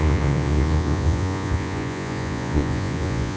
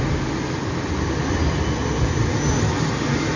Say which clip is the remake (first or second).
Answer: first